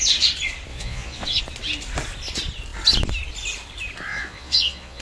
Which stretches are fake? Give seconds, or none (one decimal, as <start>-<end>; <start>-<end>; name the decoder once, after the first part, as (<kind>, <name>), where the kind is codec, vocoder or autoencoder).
0.7-1.4 (vocoder, Vocos); 4.1-5.0